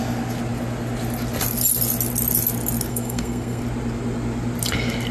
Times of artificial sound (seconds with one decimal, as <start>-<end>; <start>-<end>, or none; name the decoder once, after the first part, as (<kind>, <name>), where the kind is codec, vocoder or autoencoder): 2.9-3.6 (codec, SNAC)

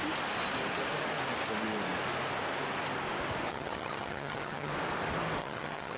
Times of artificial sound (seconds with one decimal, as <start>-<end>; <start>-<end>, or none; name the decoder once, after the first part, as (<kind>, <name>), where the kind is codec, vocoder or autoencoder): 3.5-4.7 (vocoder, HiFi-GAN); 5.4-6.0

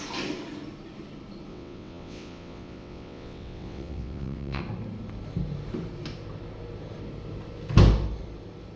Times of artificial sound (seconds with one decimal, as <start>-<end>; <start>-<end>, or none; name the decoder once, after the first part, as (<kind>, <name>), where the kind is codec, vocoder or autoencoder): 1.5-4.6 (vocoder, WaveNeXt)

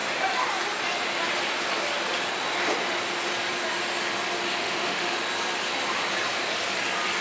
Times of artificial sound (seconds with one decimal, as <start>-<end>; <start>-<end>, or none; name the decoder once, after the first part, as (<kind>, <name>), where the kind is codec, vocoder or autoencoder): 4.6-5.2 (autoencoder, DAC-VAE)

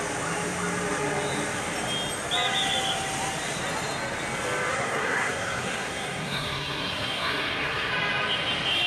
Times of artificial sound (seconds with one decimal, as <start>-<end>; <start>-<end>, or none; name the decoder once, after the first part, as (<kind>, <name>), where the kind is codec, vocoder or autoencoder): 4.7-7.9 (codec, SNAC)

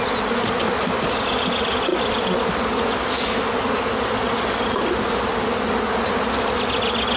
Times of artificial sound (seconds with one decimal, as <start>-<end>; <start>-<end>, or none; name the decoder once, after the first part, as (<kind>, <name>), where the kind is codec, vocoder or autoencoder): none

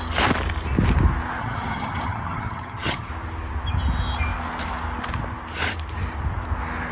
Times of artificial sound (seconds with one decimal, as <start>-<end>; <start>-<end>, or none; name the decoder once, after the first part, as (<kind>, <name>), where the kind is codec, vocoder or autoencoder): 1.4-3.1 (vocoder, HiFi-GAN)